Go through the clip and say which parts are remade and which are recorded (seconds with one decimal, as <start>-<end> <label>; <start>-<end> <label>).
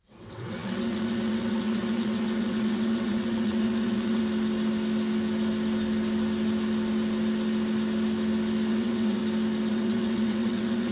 0.0-4.2 remade; 4.2-8.7 recorded; 8.7-9.2 remade; 9.2-9.7 recorded; 9.7-10.9 remade